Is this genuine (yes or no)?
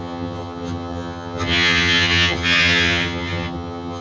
no